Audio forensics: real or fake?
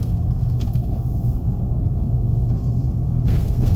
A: fake